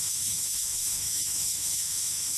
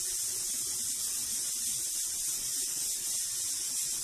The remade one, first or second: first